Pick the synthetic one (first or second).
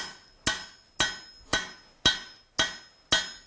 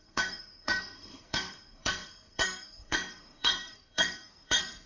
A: second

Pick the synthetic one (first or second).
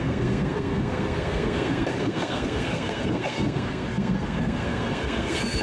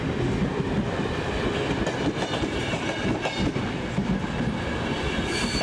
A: first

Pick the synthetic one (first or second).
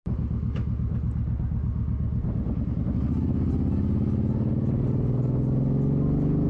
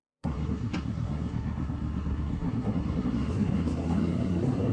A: second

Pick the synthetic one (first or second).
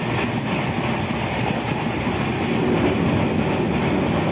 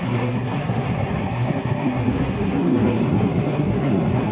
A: second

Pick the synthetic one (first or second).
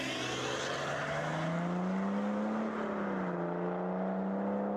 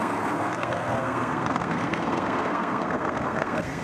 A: second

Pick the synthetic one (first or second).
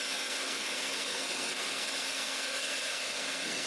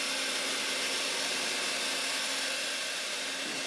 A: first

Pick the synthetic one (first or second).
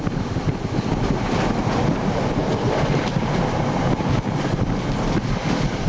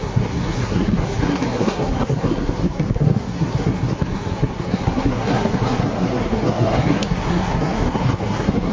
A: second